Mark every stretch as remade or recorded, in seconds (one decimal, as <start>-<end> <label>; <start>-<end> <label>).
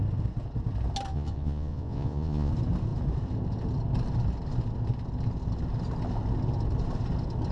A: 0.0-1.1 recorded; 1.1-2.5 remade; 2.5-7.5 recorded